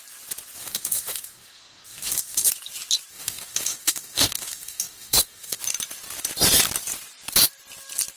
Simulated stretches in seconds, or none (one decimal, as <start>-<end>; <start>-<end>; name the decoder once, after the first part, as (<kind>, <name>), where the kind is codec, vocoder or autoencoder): 0.6-2.5 (codec, DAC); 3.1-5.6